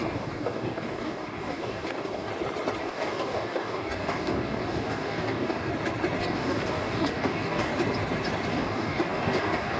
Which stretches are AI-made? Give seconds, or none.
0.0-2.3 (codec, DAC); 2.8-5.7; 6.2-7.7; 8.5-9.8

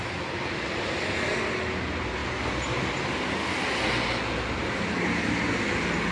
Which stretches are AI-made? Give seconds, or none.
none

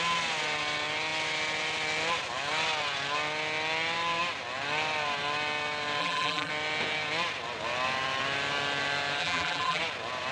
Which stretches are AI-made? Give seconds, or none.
6.0-6.5 (vocoder, BigVGAN v2); 9.2-9.8

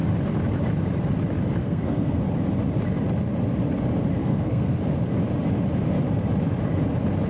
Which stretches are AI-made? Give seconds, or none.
1.6-2.2 (codec, SNAC); 4.2-4.8